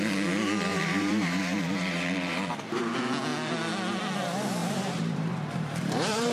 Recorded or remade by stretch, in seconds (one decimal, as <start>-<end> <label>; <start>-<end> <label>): 0.0-0.7 recorded; 0.7-2.8 remade; 2.8-4.6 recorded; 4.6-6.3 remade